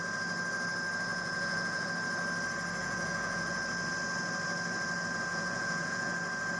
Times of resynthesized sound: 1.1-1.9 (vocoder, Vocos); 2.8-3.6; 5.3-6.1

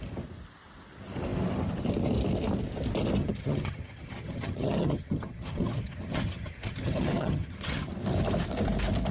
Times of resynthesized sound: 3.2-7.9 (vocoder, HiFi-GAN)

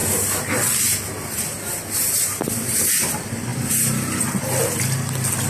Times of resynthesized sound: none

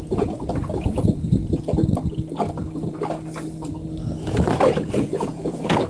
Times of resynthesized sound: 0.0-1.4 (vocoder, Vocos); 4.9-5.9